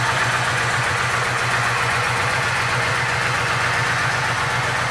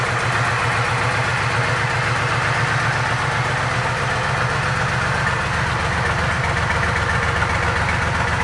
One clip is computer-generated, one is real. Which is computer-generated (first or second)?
first